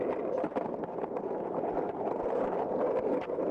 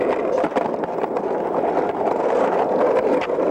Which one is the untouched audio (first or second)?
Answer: second